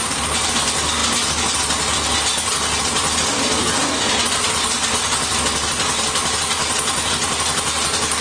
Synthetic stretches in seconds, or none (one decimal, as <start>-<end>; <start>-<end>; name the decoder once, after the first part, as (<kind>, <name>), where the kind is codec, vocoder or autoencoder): none